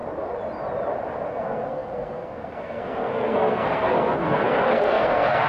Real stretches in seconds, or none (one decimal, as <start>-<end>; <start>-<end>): 0.0-1.3